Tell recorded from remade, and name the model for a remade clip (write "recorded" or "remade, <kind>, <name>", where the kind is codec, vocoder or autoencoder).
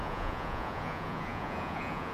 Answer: remade, vocoder, Vocos